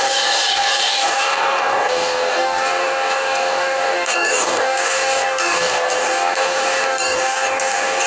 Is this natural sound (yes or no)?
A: no